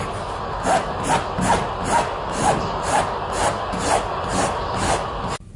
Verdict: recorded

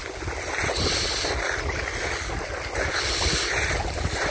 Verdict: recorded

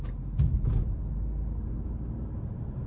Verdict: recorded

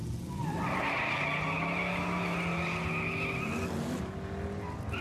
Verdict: recorded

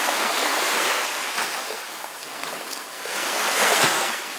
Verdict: remade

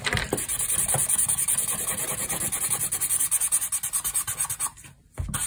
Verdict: recorded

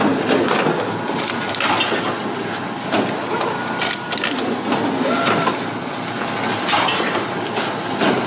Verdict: recorded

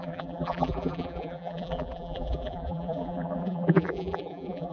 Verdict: remade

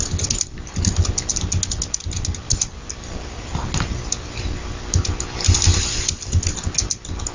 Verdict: recorded